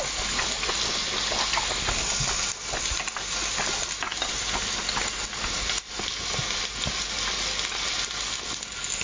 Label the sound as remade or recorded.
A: recorded